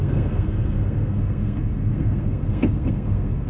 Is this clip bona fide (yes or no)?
no